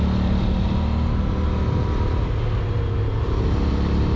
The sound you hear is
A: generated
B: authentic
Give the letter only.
B